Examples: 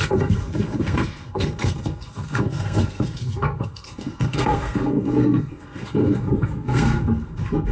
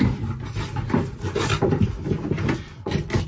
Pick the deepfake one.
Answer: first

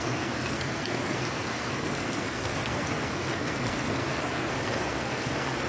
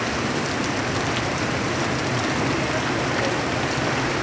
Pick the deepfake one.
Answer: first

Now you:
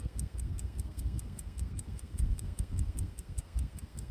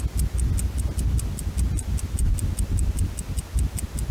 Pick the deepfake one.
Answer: first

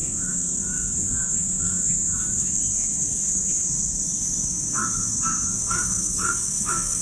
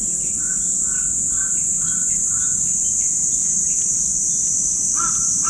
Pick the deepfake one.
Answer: first